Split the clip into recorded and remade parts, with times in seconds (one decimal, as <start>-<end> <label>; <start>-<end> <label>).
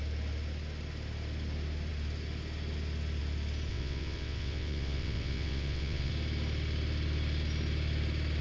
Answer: 0.0-3.7 recorded; 3.7-6.1 remade; 6.1-8.4 recorded